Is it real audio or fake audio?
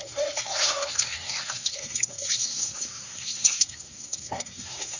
fake